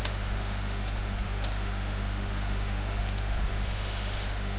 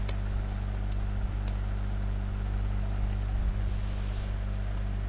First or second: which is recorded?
second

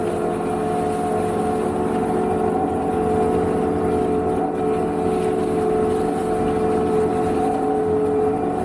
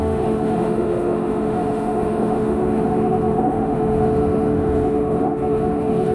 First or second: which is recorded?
first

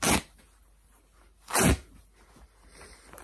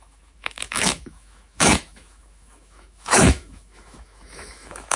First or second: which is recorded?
first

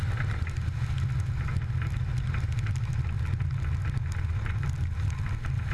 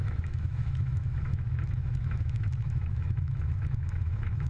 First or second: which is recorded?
first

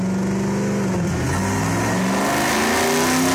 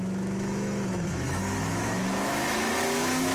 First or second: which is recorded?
first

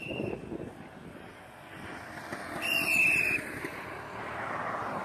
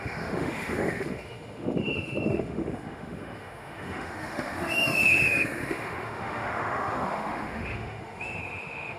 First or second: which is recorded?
first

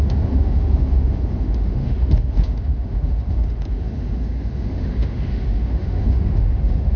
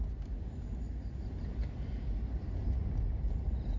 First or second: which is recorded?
second